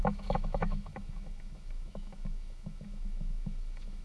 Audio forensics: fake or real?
fake